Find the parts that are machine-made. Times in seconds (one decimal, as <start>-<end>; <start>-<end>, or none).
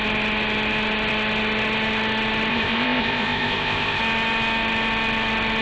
2.5-4.0